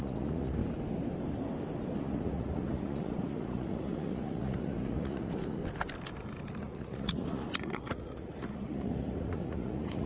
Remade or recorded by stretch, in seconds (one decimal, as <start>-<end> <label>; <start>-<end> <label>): 0.0-0.6 remade; 0.6-2.0 recorded; 2.0-5.6 remade; 5.6-6.6 recorded; 6.6-10.1 remade

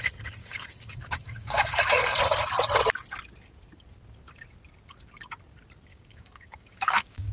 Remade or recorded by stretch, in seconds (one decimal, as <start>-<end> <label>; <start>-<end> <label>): 0.0-0.4 recorded; 0.4-2.0 remade; 2.0-5.9 recorded; 5.9-7.3 remade